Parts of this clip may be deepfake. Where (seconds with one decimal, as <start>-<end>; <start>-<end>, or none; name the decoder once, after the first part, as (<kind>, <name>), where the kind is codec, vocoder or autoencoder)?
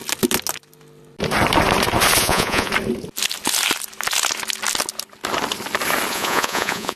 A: 2.2-2.7 (vocoder, Vocos); 6.1-7.0